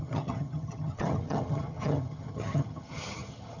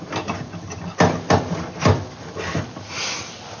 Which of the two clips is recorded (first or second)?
second